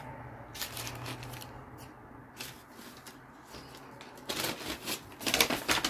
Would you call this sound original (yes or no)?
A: yes